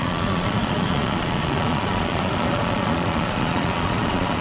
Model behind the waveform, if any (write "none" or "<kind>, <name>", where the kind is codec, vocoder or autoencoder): vocoder, Vocos